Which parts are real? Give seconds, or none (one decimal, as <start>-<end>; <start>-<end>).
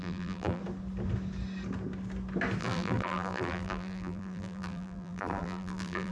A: 0.6-2.6